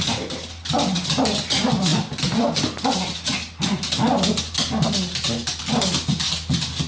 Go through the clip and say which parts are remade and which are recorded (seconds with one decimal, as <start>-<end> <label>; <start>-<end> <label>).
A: 0.0-6.9 recorded